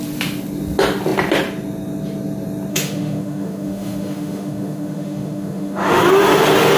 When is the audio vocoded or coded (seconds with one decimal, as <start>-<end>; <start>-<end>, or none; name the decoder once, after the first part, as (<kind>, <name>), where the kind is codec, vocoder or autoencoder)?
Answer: 2.7-6.0 (autoencoder, DAC-VAE)

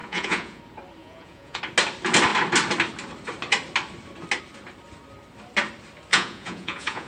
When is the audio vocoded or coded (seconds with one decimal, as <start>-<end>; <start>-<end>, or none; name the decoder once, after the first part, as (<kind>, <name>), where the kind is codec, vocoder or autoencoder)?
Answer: 0.0-0.6 (vocoder, Vocos); 1.0-1.6; 6.1-7.1

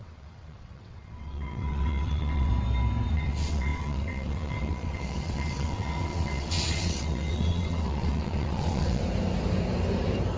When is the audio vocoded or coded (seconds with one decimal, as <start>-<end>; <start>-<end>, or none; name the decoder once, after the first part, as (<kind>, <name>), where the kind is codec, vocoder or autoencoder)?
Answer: 0.0-2.5 (vocoder, WaveNeXt); 3.1-9.0

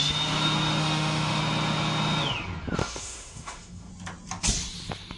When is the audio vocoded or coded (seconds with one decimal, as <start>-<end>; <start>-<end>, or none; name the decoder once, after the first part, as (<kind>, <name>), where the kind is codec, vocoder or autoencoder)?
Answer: 0.8-1.4 (autoencoder, DAC-VAE); 2.8-3.9

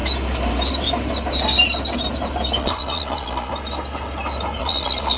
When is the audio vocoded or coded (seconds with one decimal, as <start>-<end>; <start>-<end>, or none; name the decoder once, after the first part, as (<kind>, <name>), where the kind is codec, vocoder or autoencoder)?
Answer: 2.6-3.5 (vocoder, Vocos); 4.6-5.2

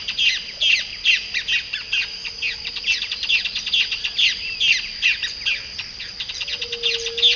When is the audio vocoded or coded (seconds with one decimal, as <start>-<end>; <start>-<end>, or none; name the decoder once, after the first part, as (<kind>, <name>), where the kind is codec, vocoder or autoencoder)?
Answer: none

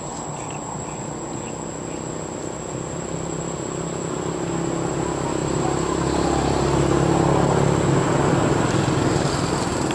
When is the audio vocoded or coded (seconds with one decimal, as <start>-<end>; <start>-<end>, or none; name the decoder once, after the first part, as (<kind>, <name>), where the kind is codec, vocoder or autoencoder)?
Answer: 5.4-7.1 (vocoder, BigVGAN v2)

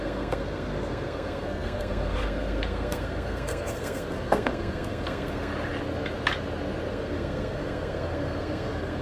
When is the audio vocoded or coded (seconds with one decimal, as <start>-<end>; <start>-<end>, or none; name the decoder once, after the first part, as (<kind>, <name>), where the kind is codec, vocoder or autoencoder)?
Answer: 0.0-5.5 (codec, SNAC); 6.9-9.0